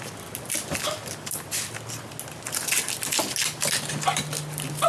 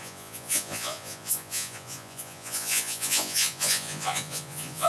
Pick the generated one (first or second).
second